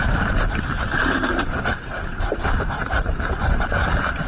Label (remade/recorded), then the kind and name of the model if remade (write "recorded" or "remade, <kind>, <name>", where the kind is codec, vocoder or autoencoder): remade, vocoder, BigVGAN v2